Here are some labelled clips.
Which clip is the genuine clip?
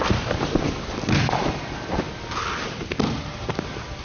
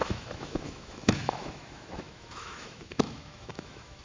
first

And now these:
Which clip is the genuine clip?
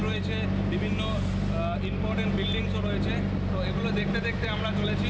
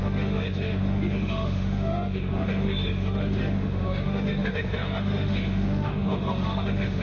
first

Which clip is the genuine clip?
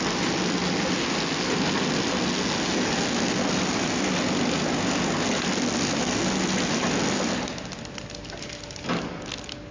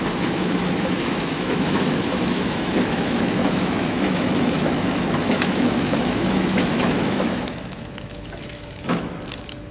first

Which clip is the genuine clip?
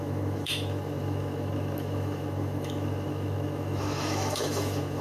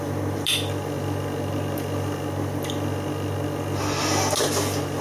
second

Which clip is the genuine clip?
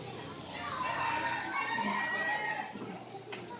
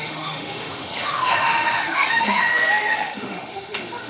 first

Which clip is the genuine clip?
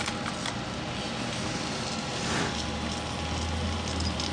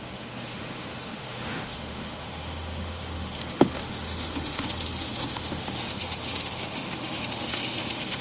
first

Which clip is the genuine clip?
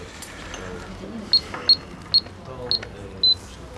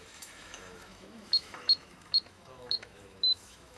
first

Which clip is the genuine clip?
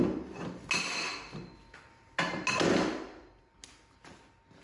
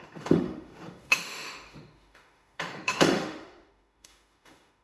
first